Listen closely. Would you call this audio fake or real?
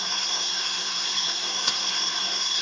fake